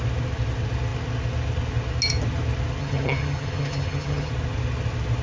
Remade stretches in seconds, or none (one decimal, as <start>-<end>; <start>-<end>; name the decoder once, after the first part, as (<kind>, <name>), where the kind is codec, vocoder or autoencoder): 2.8-4.3 (vocoder, HiFi-GAN)